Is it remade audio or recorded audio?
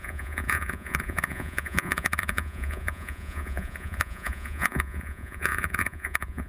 remade